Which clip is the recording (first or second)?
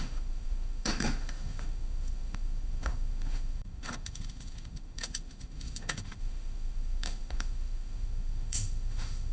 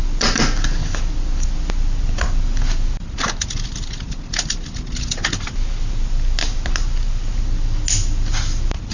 second